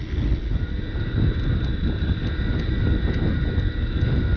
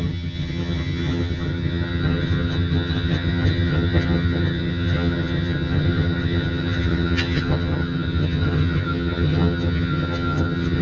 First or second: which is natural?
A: first